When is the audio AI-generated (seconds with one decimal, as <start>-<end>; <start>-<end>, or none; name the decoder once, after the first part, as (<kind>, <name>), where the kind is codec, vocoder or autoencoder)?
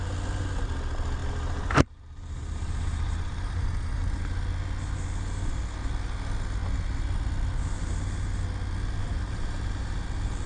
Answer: 1.2-4.0 (vocoder, BigVGAN v2); 9.0-10.0